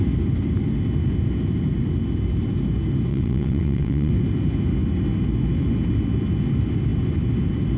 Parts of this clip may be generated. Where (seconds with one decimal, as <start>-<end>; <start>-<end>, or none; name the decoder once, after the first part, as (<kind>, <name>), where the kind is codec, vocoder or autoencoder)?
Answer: 3.1-4.1 (vocoder, WaveNeXt)

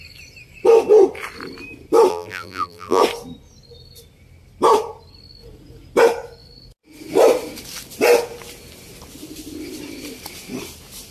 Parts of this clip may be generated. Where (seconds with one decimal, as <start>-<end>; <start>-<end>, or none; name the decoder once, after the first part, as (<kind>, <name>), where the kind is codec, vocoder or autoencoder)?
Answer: 2.1-3.0 (vocoder, BigVGAN v2)

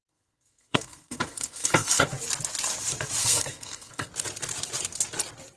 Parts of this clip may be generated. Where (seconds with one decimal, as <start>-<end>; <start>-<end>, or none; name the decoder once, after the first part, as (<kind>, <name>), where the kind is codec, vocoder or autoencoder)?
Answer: 0.0-2.1 (codec, SNAC); 3.2-4.1

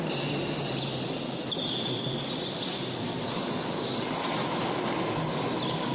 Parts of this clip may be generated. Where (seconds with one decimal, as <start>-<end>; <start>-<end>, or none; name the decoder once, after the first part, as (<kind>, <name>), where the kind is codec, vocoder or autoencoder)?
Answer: none

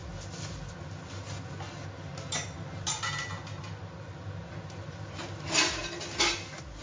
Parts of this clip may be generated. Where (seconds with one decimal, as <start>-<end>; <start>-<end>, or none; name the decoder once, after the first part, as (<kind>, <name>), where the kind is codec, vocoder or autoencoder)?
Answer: none

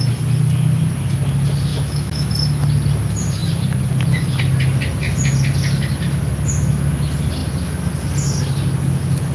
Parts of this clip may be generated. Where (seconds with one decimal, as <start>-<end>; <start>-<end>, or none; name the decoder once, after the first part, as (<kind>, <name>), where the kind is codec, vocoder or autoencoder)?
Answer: 1.7-2.3 (autoencoder, DAC-VAE)

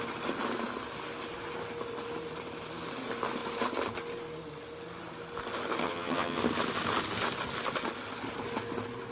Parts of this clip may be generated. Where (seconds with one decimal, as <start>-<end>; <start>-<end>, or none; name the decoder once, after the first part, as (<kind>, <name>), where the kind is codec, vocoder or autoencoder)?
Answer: 5.8-6.4 (vocoder, HiFi-GAN)